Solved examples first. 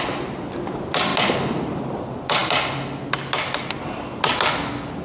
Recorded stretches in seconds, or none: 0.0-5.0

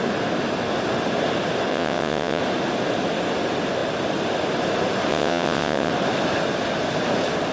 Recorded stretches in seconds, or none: 0.0-1.7; 2.4-5.1; 5.9-7.5